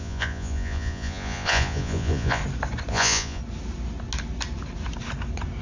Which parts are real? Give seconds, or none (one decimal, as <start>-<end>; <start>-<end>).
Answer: 2.4-2.9; 3.4-5.6